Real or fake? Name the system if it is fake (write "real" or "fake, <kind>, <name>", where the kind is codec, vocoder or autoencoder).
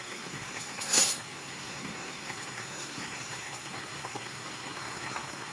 fake, codec, SNAC